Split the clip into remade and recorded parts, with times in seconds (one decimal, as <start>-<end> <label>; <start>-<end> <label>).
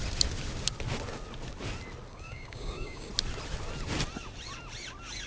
0.0-2.1 recorded; 2.1-3.1 remade; 3.1-5.3 recorded